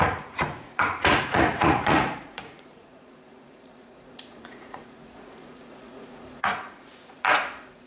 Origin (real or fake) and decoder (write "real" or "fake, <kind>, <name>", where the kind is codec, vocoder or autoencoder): fake, vocoder, Vocos